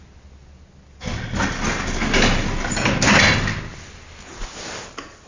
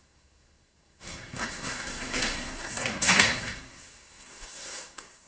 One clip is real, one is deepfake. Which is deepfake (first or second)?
second